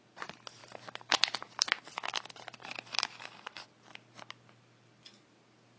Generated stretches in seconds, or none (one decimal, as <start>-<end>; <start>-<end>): none